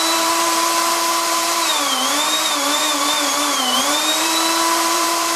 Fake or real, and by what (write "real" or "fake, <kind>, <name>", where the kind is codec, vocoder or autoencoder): fake, vocoder, BigVGAN v2